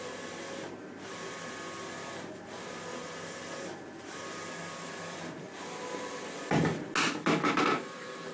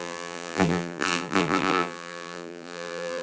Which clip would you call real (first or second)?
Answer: first